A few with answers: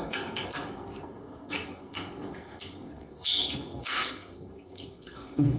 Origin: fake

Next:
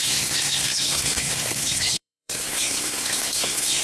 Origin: fake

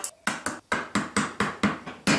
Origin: real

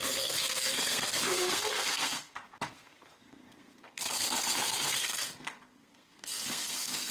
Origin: fake